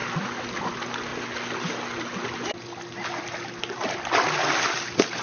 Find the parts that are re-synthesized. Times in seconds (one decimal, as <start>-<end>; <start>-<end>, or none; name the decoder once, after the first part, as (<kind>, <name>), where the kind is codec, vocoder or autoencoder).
none